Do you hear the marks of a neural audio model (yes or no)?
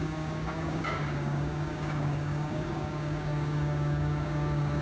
yes